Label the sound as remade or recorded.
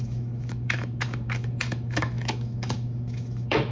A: remade